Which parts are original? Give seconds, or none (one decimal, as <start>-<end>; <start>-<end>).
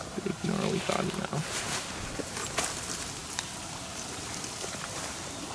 none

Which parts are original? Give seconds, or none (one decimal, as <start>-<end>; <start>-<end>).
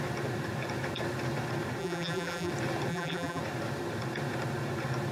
0.0-1.8; 2.5-2.9; 3.4-5.1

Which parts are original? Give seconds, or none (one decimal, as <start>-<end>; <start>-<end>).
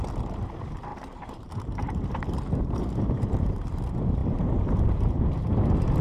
0.0-0.9; 3.8-4.2; 5.3-6.0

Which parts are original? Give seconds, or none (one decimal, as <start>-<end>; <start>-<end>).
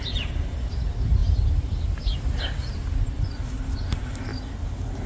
0.0-5.1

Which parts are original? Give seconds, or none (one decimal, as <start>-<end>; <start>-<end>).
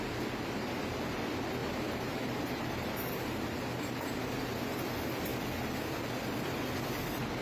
0.0-1.6; 3.0-7.4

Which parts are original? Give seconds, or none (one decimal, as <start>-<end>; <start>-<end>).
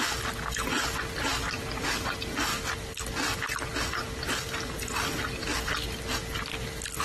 0.0-7.0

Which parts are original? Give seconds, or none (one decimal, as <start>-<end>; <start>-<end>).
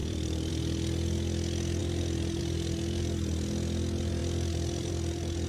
0.5-5.5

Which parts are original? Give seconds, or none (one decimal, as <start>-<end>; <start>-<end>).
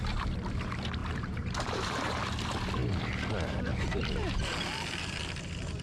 0.0-1.0; 1.8-5.8